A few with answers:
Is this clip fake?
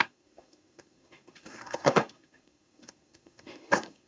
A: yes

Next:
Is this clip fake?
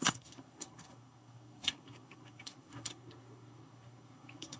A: yes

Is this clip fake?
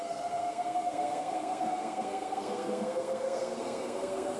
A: yes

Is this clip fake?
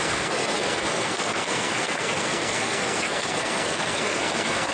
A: yes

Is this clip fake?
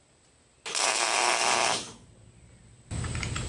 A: no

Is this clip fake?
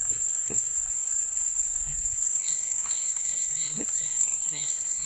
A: yes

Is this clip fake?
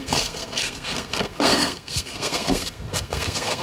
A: yes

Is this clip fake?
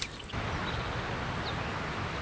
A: no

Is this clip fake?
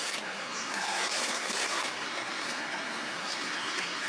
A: yes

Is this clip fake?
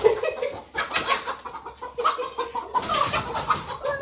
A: no